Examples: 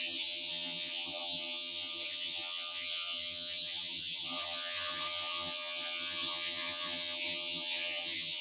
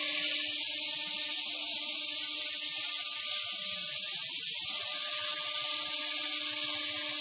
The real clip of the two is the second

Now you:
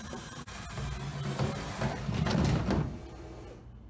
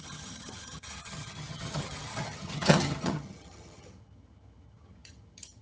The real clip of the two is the first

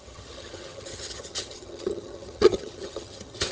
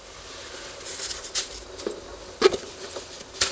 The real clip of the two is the second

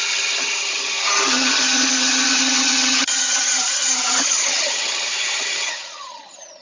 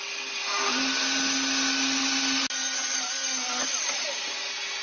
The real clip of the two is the second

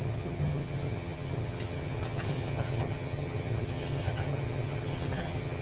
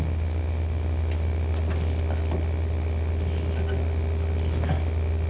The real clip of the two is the second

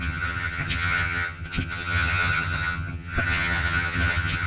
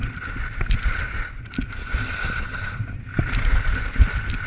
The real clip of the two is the second